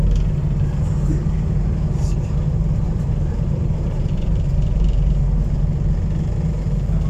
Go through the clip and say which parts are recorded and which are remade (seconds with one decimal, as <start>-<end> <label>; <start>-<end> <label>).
0.0-2.6 recorded; 2.6-5.1 remade; 5.1-7.1 recorded